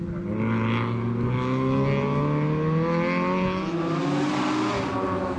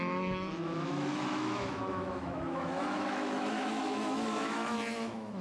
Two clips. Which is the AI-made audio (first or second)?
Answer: second